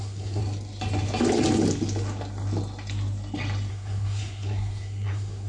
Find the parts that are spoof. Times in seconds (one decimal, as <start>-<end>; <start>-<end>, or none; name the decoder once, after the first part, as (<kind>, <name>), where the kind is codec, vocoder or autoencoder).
0.0-0.4 (codec, SNAC); 3.7-5.5